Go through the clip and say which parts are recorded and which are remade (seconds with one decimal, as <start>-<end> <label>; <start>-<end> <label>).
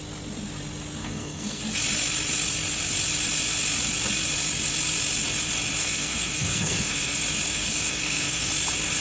0.0-1.0 recorded; 1.0-1.6 remade; 1.6-5.8 recorded; 5.8-7.1 remade; 7.1-7.5 recorded; 7.5-8.5 remade; 8.5-9.0 recorded